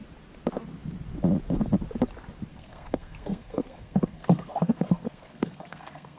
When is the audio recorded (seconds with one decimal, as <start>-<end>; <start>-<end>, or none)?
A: 0.0-2.5